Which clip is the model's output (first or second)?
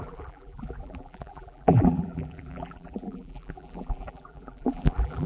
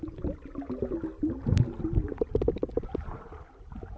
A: first